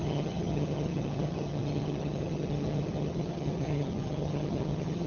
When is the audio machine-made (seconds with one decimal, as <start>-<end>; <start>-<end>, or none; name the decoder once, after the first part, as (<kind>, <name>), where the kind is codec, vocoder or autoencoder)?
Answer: 0.0-5.1 (vocoder, HiFi-GAN)